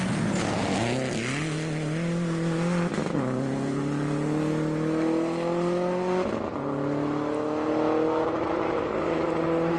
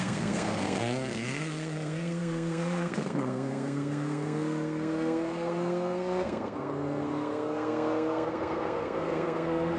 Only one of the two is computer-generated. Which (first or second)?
second